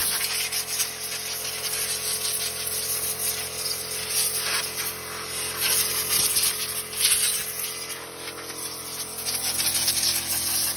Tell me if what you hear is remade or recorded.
recorded